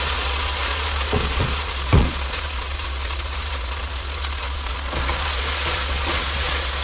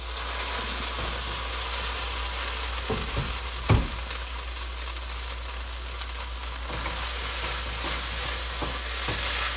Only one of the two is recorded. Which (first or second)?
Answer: second